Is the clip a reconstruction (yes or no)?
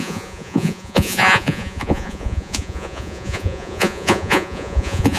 yes